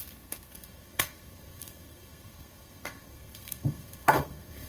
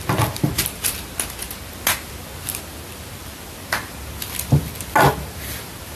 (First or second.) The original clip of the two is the second